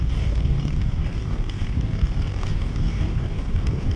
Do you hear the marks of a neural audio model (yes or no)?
yes